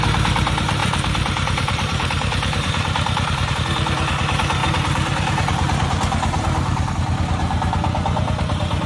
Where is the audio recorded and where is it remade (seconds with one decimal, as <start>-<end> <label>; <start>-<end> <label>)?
0.0-0.8 recorded; 0.8-3.5 remade; 3.5-4.6 recorded; 4.6-6.9 remade; 6.9-8.9 recorded